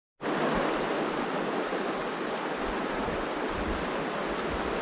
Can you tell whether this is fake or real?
real